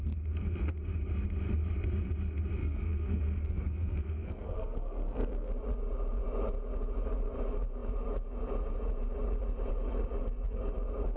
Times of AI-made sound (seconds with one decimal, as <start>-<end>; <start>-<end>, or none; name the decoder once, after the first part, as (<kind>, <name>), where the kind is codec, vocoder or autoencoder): 2.6-5.5 (codec, SNAC)